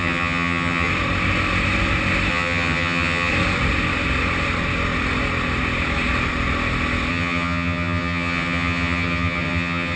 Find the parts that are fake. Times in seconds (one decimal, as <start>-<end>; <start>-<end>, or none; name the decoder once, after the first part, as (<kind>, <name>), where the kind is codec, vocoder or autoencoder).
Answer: 0.0-0.9 (vocoder, HiFi-GAN); 2.3-3.3; 7.1-10.0